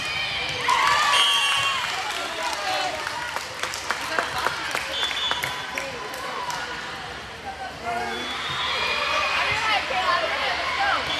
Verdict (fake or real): real